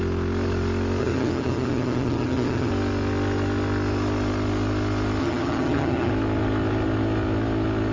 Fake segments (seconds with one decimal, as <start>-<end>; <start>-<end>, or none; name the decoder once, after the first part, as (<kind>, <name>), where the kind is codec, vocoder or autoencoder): 1.0-2.7 (vocoder, HiFi-GAN); 5.2-6.1